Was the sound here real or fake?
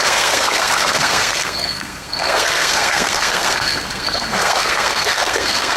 fake